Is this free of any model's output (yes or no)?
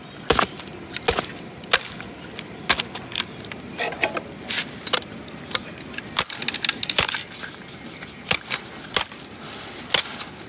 yes